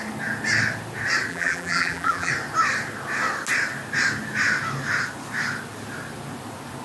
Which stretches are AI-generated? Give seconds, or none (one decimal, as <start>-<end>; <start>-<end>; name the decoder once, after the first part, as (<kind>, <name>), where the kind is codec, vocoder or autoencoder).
1.3-2.3 (vocoder, BigVGAN v2)